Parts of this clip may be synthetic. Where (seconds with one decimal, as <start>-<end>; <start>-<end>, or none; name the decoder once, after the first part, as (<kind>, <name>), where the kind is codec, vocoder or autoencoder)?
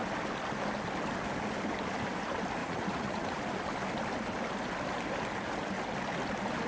2.6-3.4 (vocoder, Vocos)